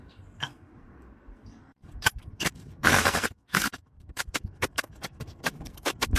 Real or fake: fake